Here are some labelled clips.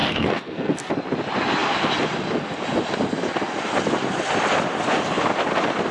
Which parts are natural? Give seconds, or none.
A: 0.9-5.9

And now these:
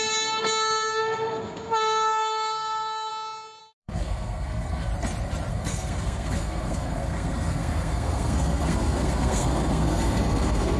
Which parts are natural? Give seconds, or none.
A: 3.1-3.6; 4.9-5.5

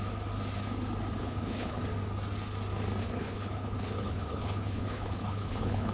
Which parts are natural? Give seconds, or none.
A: 0.0-1.2; 1.8-3.0

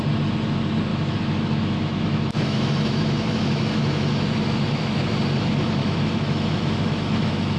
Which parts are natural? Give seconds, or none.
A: 0.0-0.9; 5.1-5.8